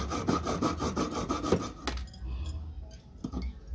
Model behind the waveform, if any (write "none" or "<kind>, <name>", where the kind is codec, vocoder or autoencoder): none